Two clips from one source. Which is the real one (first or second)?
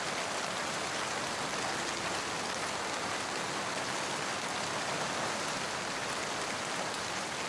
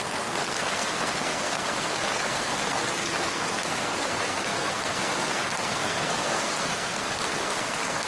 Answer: first